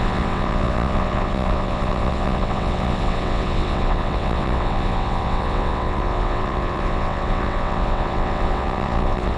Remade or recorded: remade